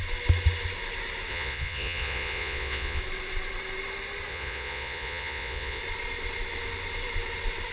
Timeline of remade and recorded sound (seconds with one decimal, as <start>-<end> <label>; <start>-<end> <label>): 0.0-1.3 recorded; 1.3-3.0 remade; 3.0-4.3 recorded; 4.3-5.8 remade; 5.8-7.7 recorded